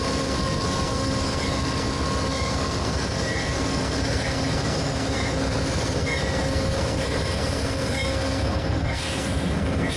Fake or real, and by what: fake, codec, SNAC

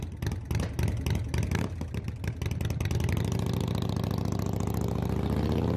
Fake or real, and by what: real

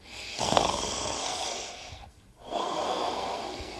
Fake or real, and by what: fake, codec, SNAC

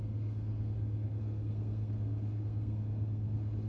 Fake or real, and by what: fake, codec, SNAC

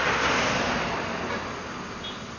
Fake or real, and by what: real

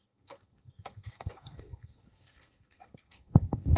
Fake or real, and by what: fake, codec, SNAC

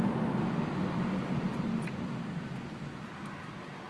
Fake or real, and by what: real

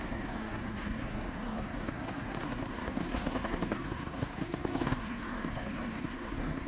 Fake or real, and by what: fake, codec, SNAC